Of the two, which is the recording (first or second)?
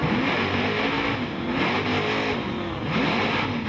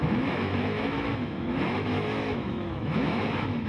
first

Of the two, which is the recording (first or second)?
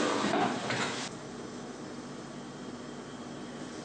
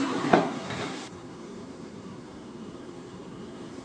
first